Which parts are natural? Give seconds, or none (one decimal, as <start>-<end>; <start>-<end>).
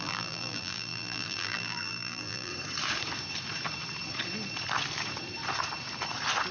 2.5-6.5